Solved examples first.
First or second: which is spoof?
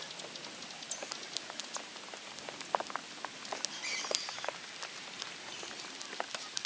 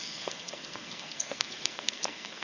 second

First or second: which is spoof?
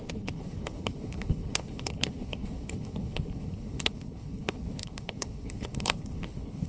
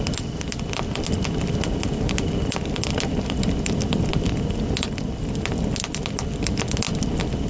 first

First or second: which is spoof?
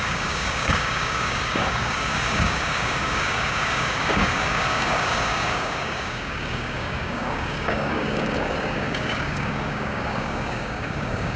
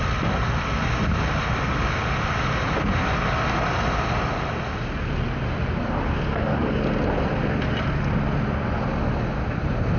first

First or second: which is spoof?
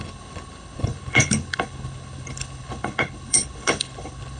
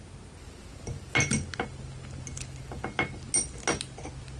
first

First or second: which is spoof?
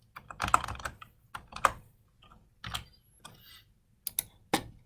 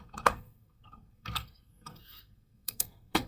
second